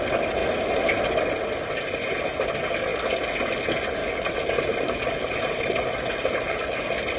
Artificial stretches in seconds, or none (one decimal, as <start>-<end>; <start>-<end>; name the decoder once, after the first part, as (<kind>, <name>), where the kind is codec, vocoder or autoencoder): 4.0-6.8 (vocoder, BigVGAN v2)